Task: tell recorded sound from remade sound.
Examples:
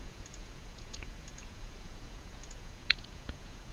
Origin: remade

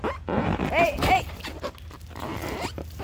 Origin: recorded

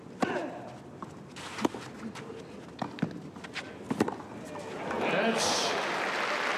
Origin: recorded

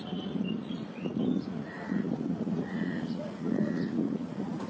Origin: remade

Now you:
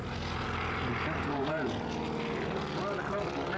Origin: recorded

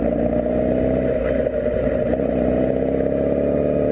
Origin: recorded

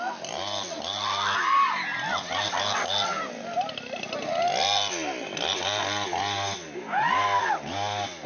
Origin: recorded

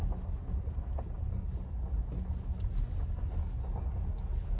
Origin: recorded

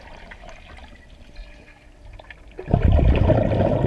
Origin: recorded